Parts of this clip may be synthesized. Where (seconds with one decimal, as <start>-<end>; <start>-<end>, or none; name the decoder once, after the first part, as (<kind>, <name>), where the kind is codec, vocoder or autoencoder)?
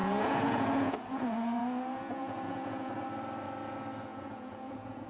0.0-3.1 (vocoder, Vocos); 4.1-5.1